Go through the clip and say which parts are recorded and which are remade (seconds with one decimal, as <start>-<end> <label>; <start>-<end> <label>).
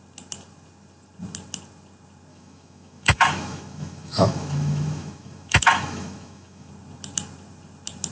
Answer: 0.0-2.3 recorded; 2.3-6.7 remade; 6.7-8.1 recorded